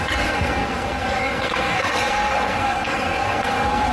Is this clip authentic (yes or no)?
no